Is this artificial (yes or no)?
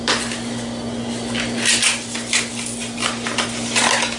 no